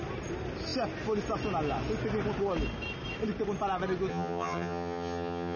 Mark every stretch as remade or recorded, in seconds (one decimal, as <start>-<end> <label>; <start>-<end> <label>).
0.0-4.1 recorded; 4.1-5.6 remade